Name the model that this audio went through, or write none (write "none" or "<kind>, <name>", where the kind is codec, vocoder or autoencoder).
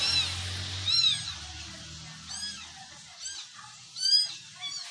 none